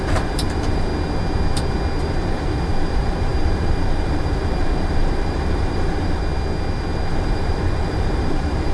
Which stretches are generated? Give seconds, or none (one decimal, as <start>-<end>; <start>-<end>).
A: 0.0-0.9; 2.0-6.2; 7.1-8.7